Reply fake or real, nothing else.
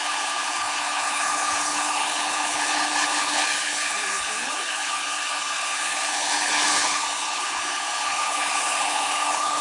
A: fake